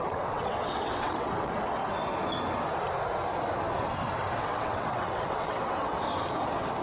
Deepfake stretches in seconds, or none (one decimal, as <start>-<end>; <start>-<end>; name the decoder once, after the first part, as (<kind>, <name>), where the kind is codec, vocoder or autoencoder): 0.0-1.8 (vocoder, WaveNeXt); 4.4-5.9